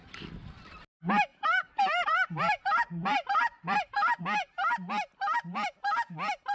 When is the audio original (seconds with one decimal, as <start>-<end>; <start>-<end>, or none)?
0.6-1.3; 4.2-6.5